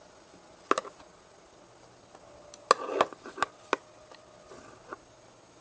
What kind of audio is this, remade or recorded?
recorded